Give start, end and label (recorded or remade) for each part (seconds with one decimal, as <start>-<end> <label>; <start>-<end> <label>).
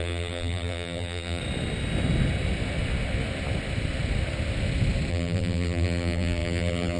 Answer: 0.0-1.4 remade; 1.4-5.1 recorded; 5.1-7.0 remade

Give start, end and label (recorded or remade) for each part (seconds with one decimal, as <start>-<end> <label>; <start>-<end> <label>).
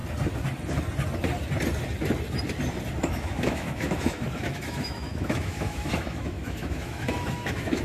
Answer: 0.0-3.0 recorded; 3.0-7.8 remade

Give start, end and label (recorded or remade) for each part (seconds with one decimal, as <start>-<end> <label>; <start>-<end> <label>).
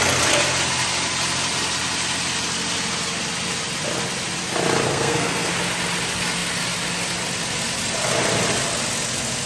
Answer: 0.0-4.9 recorded; 4.9-5.5 remade; 5.5-9.5 recorded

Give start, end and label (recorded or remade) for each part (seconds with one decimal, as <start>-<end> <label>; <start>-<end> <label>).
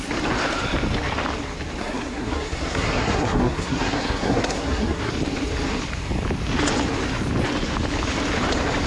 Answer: 0.0-1.8 recorded; 1.8-5.1 remade; 5.1-8.9 recorded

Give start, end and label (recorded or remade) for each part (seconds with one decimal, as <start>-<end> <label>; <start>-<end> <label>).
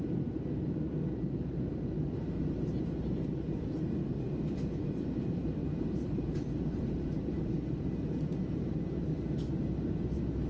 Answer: 0.0-10.5 remade